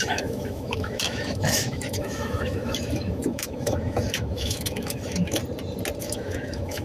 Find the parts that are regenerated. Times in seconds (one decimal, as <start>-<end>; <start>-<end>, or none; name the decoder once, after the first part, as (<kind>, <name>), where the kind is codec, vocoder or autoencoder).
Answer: 0.0-5.4 (autoencoder, DAC-VAE); 6.0-6.8